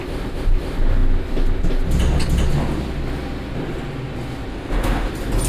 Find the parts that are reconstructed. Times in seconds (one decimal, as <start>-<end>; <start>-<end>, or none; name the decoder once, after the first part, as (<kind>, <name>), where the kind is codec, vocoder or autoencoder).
4.5-5.1 (autoencoder, DAC-VAE)